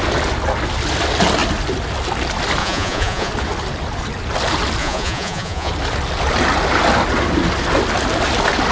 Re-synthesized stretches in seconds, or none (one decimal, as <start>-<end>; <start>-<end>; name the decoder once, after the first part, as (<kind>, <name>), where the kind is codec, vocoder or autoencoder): 2.6-3.3 (vocoder, Vocos); 4.8-5.7